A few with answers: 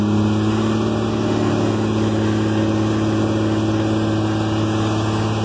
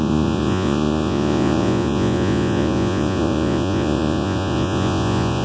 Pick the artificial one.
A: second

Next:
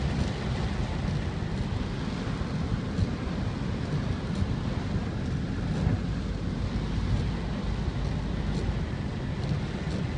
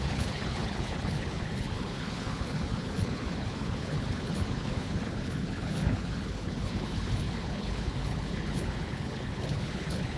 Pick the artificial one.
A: second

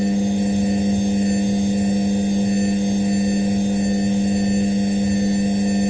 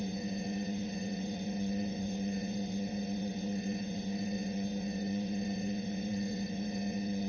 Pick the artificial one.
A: second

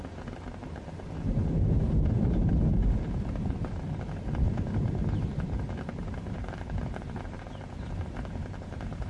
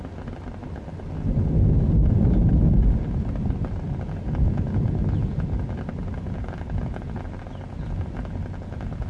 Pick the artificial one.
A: first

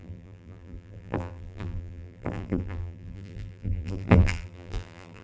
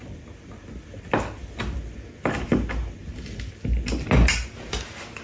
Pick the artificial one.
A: first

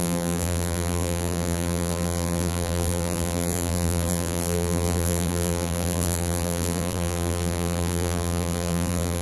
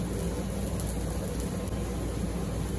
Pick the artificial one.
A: first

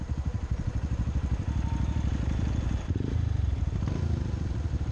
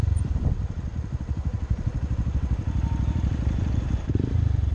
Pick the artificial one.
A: second